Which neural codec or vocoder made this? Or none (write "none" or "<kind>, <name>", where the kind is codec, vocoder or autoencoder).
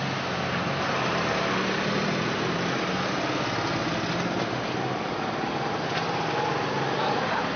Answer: none